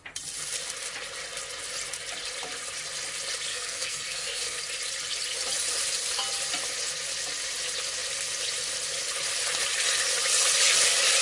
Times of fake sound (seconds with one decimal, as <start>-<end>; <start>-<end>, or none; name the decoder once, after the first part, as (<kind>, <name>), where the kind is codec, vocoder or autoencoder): 3.5-4.6 (codec, SNAC)